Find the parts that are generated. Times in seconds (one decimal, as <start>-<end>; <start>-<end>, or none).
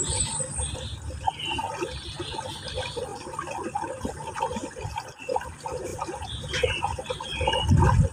none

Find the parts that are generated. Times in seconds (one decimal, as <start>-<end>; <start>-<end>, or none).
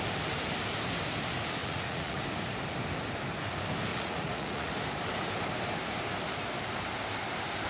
1.6-2.2; 3.9-4.7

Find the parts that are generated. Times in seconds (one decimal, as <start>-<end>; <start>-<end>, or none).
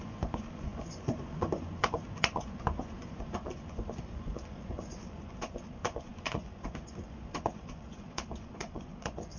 0.0-9.4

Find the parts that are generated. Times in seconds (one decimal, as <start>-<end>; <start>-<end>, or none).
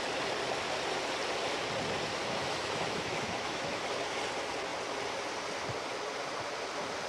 2.2-3.8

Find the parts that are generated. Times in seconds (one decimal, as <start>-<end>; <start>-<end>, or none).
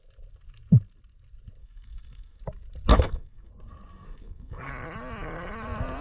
1.6-2.4; 2.9-3.5; 3.9-4.7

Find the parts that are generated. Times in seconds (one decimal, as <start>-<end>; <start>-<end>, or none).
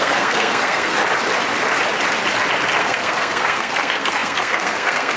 0.0-1.0; 2.8-5.2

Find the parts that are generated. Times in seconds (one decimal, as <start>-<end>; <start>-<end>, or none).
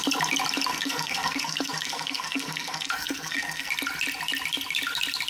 0.7-3.7